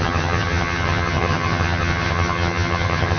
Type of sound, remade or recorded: remade